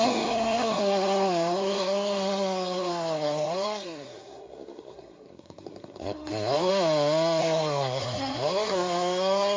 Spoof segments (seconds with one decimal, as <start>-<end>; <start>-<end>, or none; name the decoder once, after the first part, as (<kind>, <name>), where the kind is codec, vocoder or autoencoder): 0.0-6.7 (codec, SNAC); 7.4-9.6